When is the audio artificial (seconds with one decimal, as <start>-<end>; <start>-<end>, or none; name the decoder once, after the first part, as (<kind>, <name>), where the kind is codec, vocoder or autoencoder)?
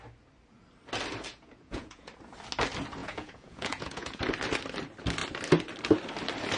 1.3-2.1 (vocoder, Vocos); 3.0-4.2